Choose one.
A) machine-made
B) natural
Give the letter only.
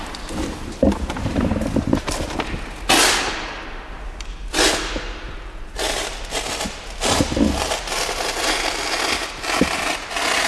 B